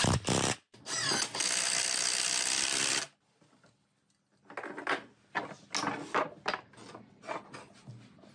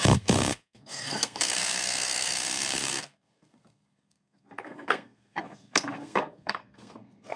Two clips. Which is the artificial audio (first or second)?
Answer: second